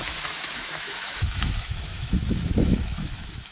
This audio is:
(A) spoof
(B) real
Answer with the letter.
A